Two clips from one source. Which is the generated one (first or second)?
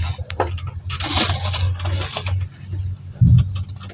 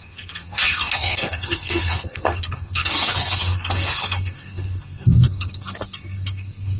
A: second